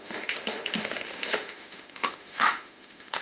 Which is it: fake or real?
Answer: fake